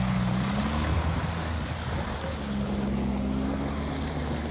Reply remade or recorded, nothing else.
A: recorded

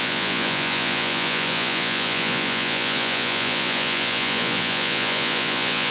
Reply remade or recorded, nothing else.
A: remade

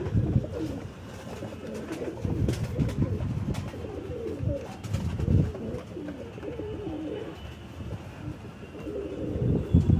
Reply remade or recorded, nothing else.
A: recorded